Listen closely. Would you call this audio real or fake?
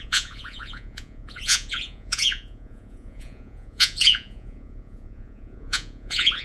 fake